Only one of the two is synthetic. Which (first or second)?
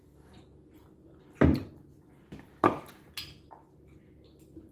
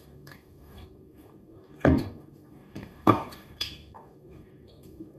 second